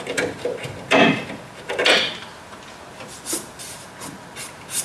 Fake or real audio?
real